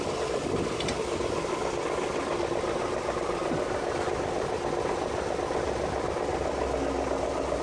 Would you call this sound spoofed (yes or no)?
no